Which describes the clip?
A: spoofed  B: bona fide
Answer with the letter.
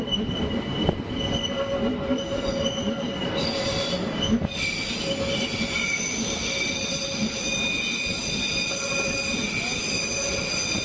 B